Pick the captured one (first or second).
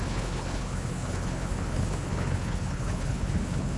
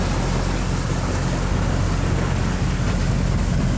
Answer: second